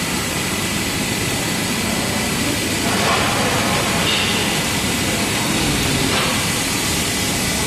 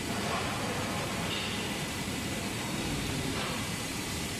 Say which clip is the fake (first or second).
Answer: second